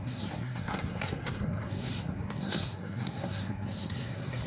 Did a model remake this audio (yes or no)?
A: yes